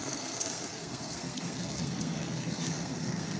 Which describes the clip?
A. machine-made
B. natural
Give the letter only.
A